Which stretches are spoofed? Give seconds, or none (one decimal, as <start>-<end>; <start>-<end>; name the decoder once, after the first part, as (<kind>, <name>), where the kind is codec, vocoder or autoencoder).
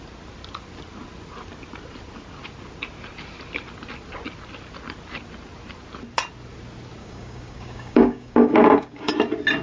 7.0-9.1 (codec, DAC)